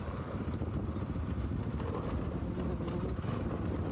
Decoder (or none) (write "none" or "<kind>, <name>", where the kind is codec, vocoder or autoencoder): none